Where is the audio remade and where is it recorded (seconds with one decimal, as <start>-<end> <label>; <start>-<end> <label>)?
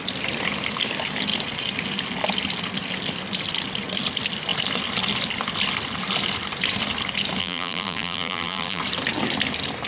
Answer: 0.0-7.4 recorded; 7.4-8.8 remade; 8.8-9.9 recorded